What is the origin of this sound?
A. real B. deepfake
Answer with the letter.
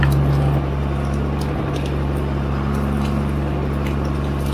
A